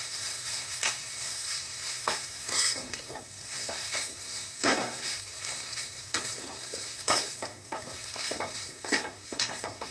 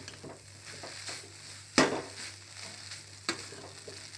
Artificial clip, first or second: first